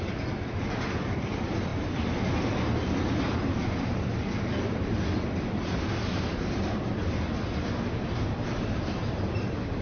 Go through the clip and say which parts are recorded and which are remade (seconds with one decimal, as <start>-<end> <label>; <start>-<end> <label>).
0.0-9.8 recorded